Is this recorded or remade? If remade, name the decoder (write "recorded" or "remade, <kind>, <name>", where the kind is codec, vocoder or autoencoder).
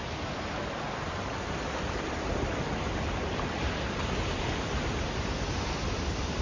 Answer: recorded